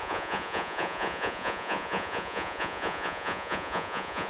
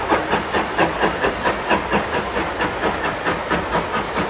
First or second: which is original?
second